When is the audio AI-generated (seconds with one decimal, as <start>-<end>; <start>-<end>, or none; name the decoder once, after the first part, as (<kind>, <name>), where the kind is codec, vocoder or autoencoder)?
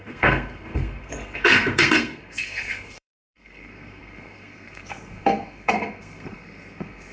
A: 0.0-7.1 (codec, SNAC)